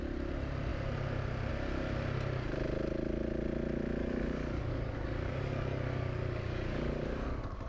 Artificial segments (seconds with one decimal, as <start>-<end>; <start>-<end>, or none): 4.0-7.7